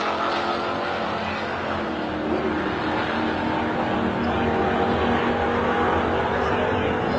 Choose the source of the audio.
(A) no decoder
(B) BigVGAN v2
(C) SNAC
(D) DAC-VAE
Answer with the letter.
A